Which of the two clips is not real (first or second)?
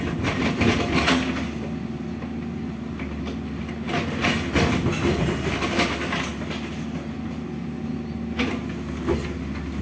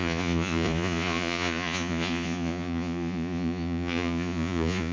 second